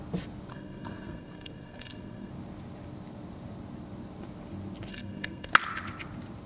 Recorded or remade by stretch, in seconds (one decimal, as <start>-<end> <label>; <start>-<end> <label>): 0.0-0.5 recorded; 0.5-2.3 remade; 2.3-4.9 recorded; 4.9-5.5 remade; 5.5-6.5 recorded